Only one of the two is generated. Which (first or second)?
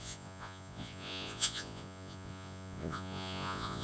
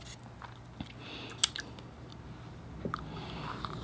first